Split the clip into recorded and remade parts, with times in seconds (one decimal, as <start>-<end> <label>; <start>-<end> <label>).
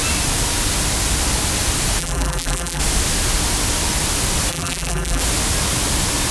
0.0-2.0 recorded; 2.0-2.8 remade; 2.8-4.5 recorded; 4.5-5.2 remade; 5.2-6.3 recorded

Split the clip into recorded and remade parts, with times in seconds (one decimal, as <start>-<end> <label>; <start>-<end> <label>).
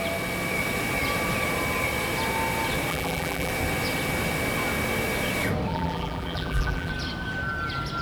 0.0-2.9 recorded; 2.9-3.5 remade; 3.5-5.7 recorded; 5.7-6.9 remade; 6.9-8.0 recorded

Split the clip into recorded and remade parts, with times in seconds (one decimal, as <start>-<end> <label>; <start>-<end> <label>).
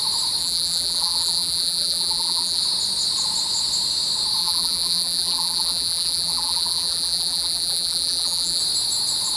0.0-0.4 recorded; 0.4-2.6 remade; 2.6-4.4 recorded; 4.4-8.6 remade; 8.6-9.4 recorded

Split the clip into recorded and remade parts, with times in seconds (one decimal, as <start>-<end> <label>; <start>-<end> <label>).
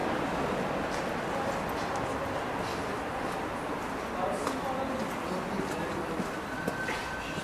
0.0-2.7 recorded; 2.7-3.3 remade; 3.3-7.4 recorded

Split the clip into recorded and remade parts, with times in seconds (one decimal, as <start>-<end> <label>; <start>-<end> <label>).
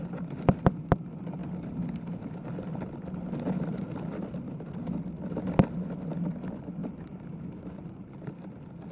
0.0-8.9 recorded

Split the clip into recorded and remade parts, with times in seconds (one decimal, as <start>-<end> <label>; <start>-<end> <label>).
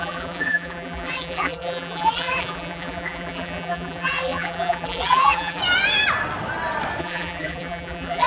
0.0-5.6 remade; 5.6-7.0 recorded; 7.0-8.3 remade